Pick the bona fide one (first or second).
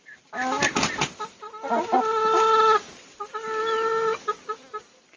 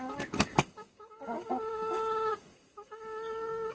first